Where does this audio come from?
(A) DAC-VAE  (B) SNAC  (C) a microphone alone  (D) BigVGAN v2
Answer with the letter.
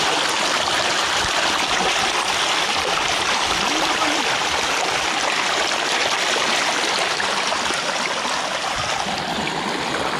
C